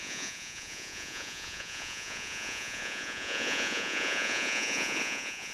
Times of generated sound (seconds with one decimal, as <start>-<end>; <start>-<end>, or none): 0.0-5.5